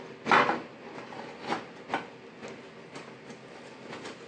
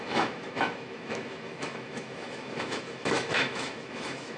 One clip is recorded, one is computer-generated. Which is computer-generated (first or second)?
second